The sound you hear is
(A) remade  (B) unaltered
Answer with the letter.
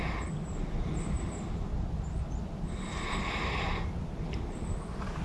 B